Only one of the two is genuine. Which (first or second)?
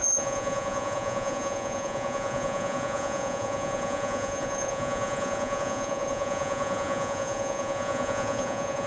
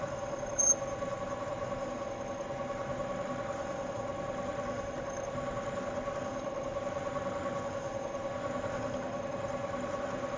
second